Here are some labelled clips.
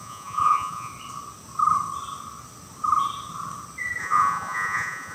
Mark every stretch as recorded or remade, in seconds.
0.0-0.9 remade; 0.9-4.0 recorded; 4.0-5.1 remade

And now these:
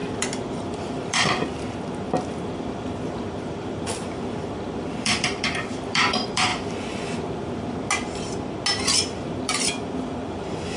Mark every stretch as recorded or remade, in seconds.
0.0-1.5 remade; 1.5-2.3 recorded; 2.3-6.5 remade; 6.5-8.8 recorded; 8.8-10.8 remade

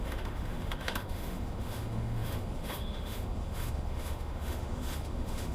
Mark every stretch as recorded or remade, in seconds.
0.0-5.5 remade

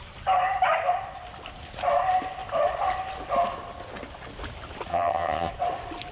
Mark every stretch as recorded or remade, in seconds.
0.0-4.9 recorded; 4.9-5.5 remade; 5.5-6.1 recorded